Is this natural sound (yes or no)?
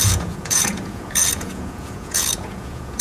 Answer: no